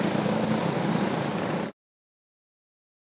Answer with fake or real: real